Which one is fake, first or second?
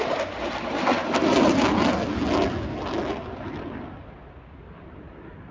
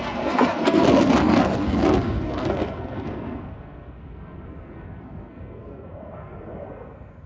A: second